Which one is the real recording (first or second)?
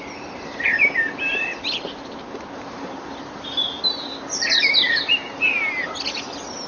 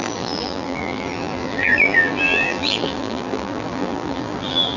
first